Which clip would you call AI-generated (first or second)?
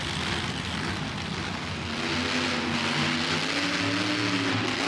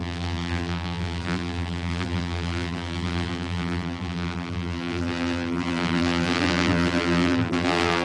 second